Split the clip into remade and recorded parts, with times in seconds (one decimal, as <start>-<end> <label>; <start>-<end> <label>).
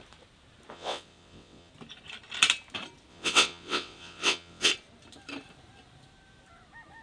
0.0-0.7 recorded; 0.7-1.7 remade; 1.7-3.1 recorded; 3.1-4.7 remade; 4.7-7.0 recorded